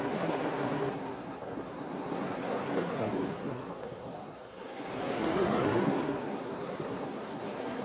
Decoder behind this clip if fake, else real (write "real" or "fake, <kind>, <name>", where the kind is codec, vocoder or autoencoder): fake, codec, SNAC